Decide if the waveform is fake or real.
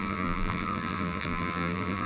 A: fake